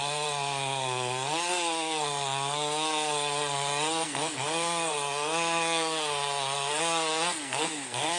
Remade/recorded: remade